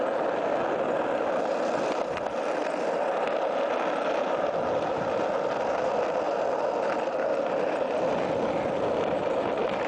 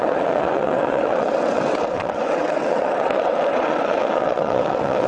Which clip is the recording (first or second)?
first